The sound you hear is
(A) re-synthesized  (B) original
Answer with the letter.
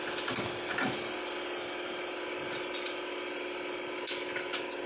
B